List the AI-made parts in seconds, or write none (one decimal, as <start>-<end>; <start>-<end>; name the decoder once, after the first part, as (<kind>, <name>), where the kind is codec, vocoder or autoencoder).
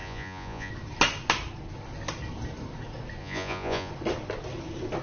0.0-0.7 (vocoder, Vocos); 3.2-3.9